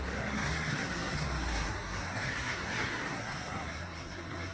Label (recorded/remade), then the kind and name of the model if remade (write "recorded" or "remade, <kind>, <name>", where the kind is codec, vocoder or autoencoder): remade, codec, SNAC